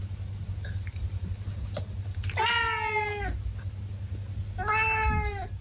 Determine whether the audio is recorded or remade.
recorded